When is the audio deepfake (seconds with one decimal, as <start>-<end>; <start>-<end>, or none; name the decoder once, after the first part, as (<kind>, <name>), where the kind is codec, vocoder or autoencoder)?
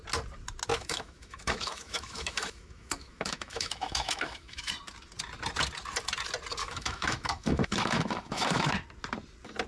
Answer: 0.7-4.7 (autoencoder, DAC-VAE); 6.6-8.7